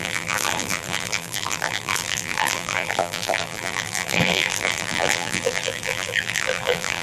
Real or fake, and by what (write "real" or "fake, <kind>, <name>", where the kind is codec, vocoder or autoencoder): fake, vocoder, BigVGAN v2